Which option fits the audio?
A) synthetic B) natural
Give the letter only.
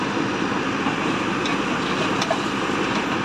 B